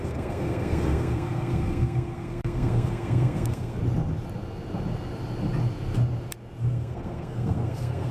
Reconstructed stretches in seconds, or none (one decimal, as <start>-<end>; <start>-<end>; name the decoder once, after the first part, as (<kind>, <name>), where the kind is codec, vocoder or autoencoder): 0.0-3.8 (codec, SNAC); 6.6-8.1